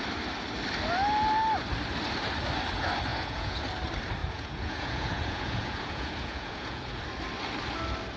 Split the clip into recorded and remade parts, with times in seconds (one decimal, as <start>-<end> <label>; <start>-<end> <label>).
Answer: 0.0-3.1 recorded; 3.1-3.6 remade; 3.6-4.2 recorded; 4.2-7.0 remade; 7.0-8.2 recorded